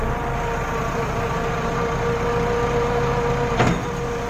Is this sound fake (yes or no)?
no